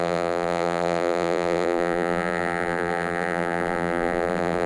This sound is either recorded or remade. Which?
remade